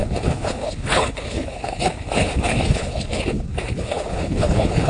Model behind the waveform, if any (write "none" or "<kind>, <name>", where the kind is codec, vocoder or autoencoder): codec, HILCodec